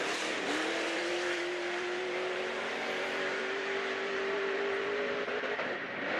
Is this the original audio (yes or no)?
no